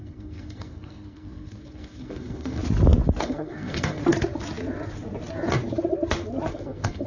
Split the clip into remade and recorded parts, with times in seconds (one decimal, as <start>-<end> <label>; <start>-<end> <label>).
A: 0.0-2.6 remade; 2.6-3.2 recorded; 3.2-4.0 remade; 4.0-6.5 recorded; 6.5-7.1 remade